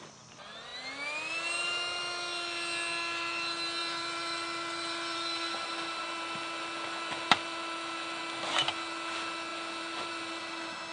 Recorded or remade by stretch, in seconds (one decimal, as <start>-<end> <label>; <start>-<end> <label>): 0.0-3.8 recorded; 3.8-8.2 remade; 8.2-9.5 recorded; 9.5-10.4 remade; 10.4-10.9 recorded